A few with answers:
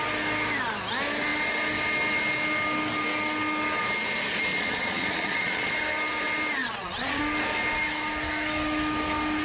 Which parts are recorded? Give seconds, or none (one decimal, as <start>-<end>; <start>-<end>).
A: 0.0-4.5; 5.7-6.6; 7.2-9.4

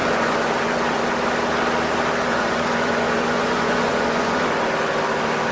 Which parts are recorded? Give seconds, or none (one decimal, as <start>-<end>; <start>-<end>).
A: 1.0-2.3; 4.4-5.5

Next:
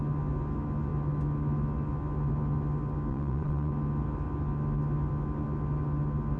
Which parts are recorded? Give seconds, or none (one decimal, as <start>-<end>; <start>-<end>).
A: 0.0-3.1; 3.7-6.4

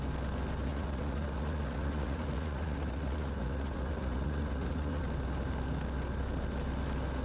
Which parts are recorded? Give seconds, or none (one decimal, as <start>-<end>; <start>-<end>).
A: 0.0-0.7; 5.0-7.2

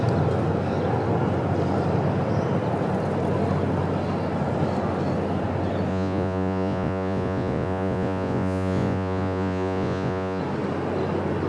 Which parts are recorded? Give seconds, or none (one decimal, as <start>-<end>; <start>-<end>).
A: 0.0-5.9; 10.4-11.5

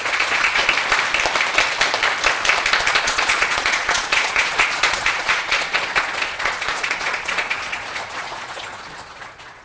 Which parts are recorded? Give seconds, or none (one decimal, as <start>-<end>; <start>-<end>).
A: 0.6-2.9